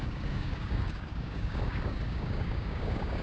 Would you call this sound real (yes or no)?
no